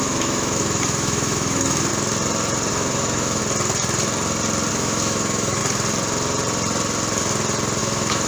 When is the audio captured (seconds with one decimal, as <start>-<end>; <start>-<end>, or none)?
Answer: 1.9-2.7; 3.4-4.7; 5.6-7.8